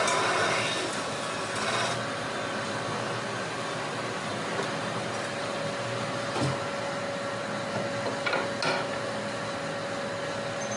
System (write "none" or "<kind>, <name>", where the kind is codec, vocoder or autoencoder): none